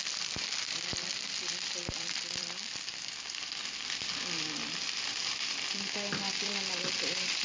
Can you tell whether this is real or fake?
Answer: fake